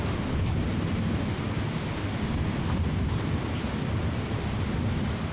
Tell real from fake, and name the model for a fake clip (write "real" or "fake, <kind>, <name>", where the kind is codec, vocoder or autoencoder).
fake, vocoder, BigVGAN v2